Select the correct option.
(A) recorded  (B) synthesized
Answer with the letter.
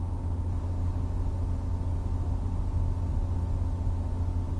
A